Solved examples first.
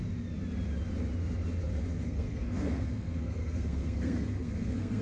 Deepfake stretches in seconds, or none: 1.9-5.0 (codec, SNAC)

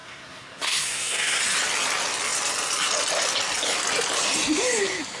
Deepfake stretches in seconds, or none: 0.0-1.4 (codec, SNAC)